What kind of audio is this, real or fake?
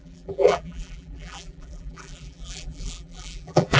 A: fake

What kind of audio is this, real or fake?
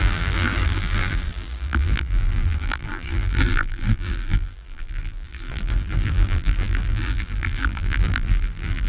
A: fake